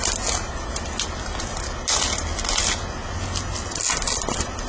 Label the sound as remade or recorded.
recorded